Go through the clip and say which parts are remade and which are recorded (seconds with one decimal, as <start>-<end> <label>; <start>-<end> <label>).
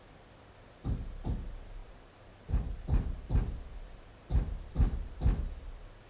0.0-1.8 recorded; 1.8-5.2 remade; 5.2-6.1 recorded